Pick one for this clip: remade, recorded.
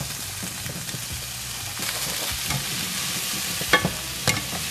recorded